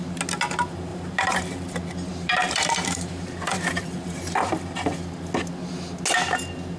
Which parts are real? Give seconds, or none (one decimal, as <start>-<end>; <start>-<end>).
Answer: 0.0-0.9; 1.4-2.1; 4.5-6.8